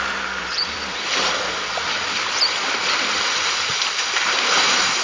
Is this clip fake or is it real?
fake